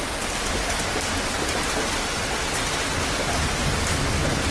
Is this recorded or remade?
recorded